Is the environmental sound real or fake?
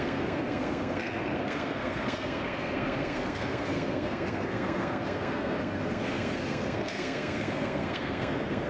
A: fake